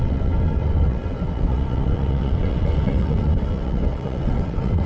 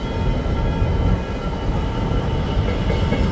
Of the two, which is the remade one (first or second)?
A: first